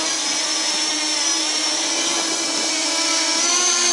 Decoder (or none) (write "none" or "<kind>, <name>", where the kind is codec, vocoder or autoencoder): none